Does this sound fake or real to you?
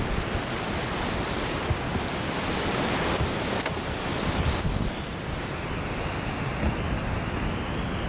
real